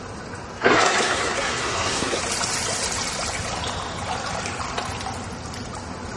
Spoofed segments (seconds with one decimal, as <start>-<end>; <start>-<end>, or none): 0.5-2.2